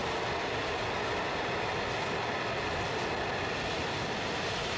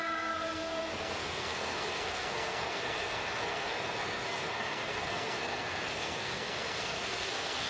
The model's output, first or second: second